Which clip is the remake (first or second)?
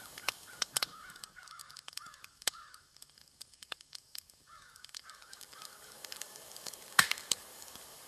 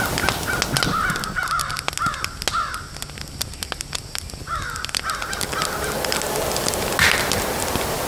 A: first